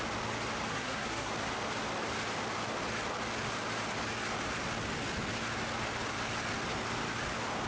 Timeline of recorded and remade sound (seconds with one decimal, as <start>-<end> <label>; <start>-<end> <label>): 0.0-0.7 recorded; 0.7-1.3 remade; 1.3-7.7 recorded